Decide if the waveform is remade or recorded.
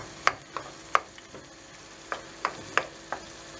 recorded